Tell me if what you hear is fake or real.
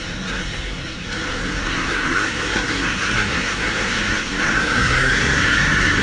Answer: fake